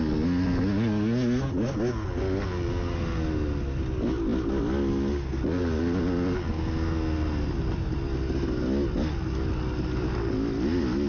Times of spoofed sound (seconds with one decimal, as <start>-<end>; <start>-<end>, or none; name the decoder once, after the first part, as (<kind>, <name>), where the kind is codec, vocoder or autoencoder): none